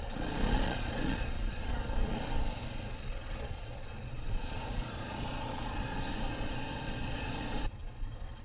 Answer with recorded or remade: remade